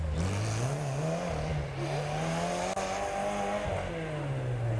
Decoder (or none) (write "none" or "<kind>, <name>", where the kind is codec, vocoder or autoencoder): none